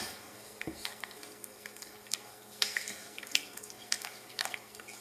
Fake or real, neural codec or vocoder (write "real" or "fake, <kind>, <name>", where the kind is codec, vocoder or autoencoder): fake, codec, SNAC